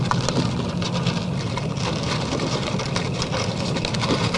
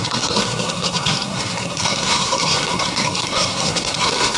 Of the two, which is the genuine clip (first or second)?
first